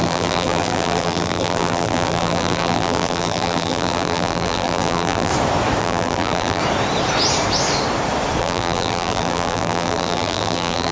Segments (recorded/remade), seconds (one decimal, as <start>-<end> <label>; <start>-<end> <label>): 0.0-5.3 remade; 5.3-5.8 recorded; 5.8-6.6 remade; 6.6-8.4 recorded; 8.4-10.9 remade